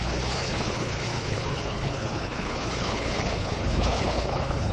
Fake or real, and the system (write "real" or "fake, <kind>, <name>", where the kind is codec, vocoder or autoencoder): fake, codec, HILCodec